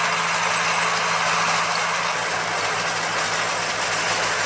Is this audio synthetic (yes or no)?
no